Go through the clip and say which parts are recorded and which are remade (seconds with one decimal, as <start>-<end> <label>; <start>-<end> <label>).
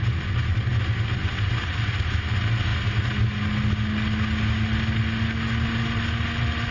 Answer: 0.0-6.7 recorded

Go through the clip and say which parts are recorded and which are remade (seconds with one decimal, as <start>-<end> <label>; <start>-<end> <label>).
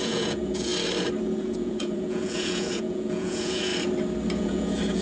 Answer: 0.0-0.7 remade; 0.7-1.2 recorded; 1.2-3.7 remade; 3.7-4.4 recorded; 4.4-5.0 remade